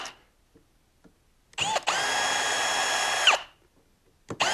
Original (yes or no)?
yes